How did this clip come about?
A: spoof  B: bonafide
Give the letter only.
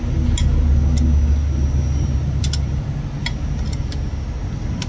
B